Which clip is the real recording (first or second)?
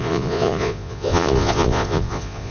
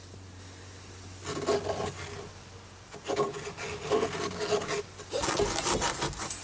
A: second